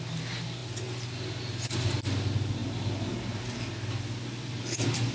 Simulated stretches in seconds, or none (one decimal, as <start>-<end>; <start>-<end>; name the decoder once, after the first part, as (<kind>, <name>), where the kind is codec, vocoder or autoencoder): none